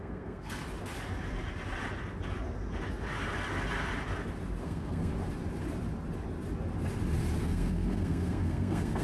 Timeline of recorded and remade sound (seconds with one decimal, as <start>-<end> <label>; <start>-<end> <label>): 0.0-0.6 remade; 0.6-4.6 recorded; 4.6-5.1 remade; 5.1-7.4 recorded; 7.4-9.0 remade